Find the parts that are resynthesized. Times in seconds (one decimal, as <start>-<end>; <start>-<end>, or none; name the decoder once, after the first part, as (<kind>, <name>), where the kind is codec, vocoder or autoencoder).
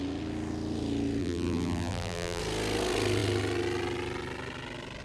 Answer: 1.2-2.4 (vocoder, BigVGAN v2)